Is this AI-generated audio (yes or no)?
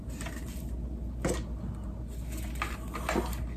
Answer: no